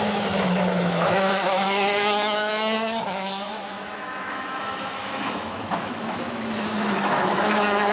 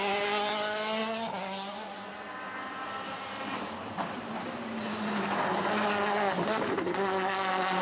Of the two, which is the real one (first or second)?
second